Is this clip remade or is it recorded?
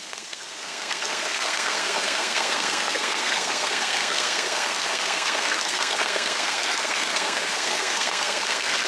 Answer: remade